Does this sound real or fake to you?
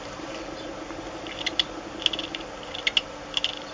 real